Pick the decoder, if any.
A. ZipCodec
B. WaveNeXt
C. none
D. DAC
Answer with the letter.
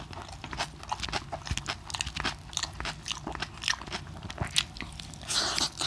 C